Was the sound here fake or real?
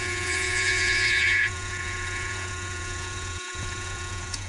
fake